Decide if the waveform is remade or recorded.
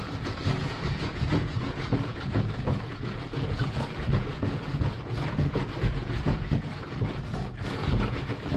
remade